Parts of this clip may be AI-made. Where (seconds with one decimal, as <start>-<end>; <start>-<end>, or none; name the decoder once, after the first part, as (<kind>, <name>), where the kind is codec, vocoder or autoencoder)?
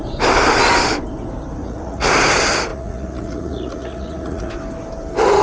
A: 1.6-2.1 (vocoder, Vocos); 2.7-4.5